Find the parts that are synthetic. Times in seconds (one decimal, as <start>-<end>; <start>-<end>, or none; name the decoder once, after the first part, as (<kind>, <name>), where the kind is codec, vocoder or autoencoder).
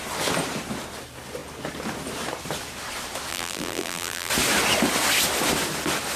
3.3-4.3 (vocoder, BigVGAN v2)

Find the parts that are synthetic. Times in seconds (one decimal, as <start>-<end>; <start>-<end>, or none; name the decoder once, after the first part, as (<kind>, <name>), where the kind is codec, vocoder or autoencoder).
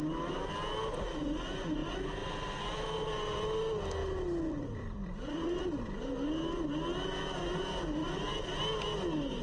4.0-5.6 (vocoder, BigVGAN v2); 8.0-8.6